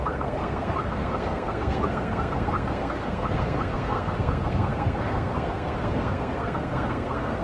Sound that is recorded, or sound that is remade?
remade